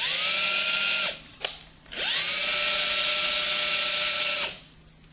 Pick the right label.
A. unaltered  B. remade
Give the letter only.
A